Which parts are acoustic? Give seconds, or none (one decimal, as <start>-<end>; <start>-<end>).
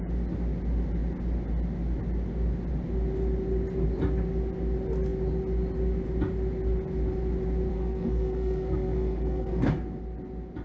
0.0-7.7; 9.7-10.6